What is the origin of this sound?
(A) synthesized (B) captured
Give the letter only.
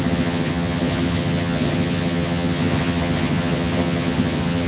A